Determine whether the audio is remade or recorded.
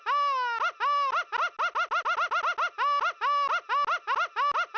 recorded